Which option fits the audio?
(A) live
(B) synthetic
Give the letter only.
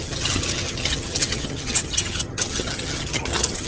B